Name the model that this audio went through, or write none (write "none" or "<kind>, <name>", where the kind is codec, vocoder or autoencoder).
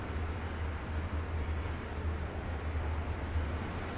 none